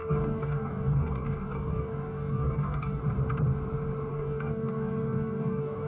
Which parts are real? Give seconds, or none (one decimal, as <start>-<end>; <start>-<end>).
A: 3.0-4.1